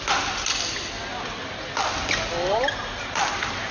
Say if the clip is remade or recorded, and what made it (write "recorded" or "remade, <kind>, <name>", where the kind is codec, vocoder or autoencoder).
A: recorded